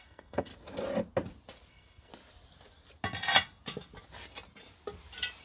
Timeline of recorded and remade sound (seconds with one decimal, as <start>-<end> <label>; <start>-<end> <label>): 0.0-0.5 remade; 0.5-1.7 recorded; 1.7-2.1 remade; 2.1-5.4 recorded

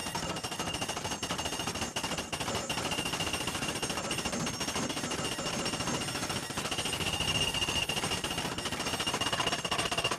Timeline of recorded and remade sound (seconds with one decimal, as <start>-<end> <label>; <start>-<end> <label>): 0.0-10.2 recorded

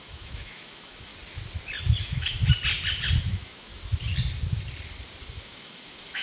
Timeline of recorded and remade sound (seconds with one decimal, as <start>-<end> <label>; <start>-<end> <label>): 0.0-1.1 remade; 1.1-2.0 recorded; 2.0-2.4 remade; 2.4-3.3 recorded; 3.3-3.7 remade; 3.7-5.4 recorded; 5.4-6.2 remade

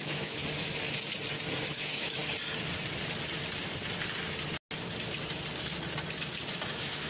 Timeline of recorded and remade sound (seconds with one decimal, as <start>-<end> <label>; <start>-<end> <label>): 0.0-0.4 remade; 0.4-1.6 recorded; 1.6-2.2 remade; 2.2-6.5 recorded; 6.5-7.1 remade

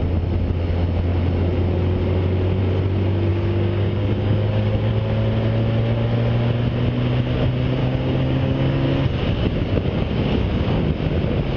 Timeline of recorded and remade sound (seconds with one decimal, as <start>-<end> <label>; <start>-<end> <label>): 0.0-3.3 recorded; 3.3-4.9 remade; 4.9-7.8 recorded; 7.8-10.8 remade; 10.8-11.6 recorded

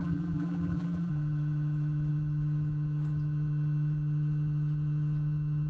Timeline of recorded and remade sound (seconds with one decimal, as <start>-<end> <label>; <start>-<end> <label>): 0.0-1.1 remade; 1.1-5.7 recorded